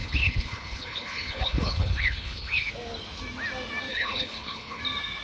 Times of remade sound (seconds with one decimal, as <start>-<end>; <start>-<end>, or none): 0.0-2.7; 3.9-4.8